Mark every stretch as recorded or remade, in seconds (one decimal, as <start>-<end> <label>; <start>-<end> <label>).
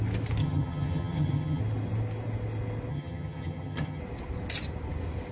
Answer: 0.0-0.4 recorded; 0.4-1.6 remade; 1.6-2.9 recorded; 2.9-4.0 remade; 4.0-5.3 recorded